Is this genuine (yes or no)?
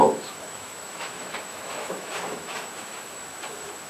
no